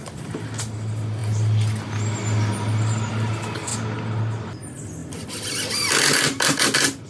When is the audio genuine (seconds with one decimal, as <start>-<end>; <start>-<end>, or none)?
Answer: 0.0-7.1